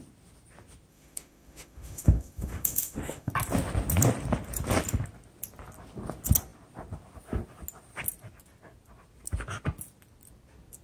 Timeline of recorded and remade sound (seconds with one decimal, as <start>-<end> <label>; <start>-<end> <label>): 0.0-0.9 recorded; 0.9-3.3 remade; 3.3-10.8 recorded